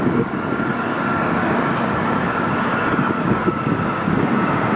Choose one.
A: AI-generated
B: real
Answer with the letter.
A